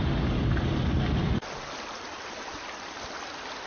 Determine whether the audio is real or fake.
real